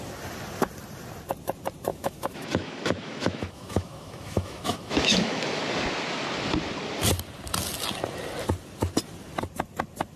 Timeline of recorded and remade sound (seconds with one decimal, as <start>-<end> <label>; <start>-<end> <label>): 0.0-1.9 recorded; 1.9-5.6 remade; 5.6-10.2 recorded